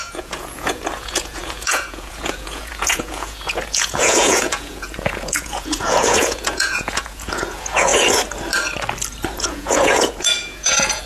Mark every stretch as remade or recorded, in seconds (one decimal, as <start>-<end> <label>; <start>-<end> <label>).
0.0-7.9 remade; 7.9-9.4 recorded; 9.4-11.1 remade